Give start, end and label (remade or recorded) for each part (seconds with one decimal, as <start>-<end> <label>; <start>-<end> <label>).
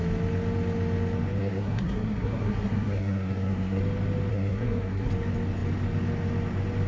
0.0-1.4 recorded; 1.4-3.8 remade; 3.8-4.3 recorded; 4.3-5.1 remade; 5.1-6.9 recorded